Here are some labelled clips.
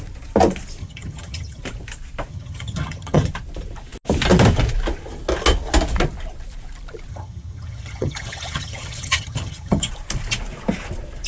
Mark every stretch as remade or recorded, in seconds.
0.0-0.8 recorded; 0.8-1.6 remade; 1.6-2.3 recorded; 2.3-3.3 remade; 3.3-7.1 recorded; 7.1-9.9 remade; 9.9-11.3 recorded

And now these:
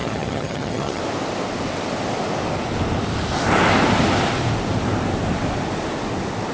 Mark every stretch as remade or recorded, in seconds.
0.0-1.0 remade; 1.0-6.5 recorded

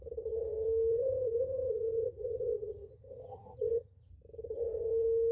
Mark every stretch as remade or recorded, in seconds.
0.0-0.9 recorded; 0.9-4.1 remade; 4.1-5.3 recorded